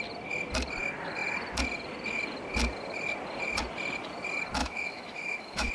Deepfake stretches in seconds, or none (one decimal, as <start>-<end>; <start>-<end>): 4.6-5.7